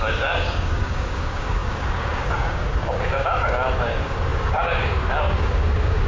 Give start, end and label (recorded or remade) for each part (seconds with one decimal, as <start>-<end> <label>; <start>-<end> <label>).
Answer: 0.0-6.1 remade